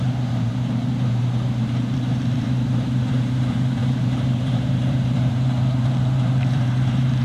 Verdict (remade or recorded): remade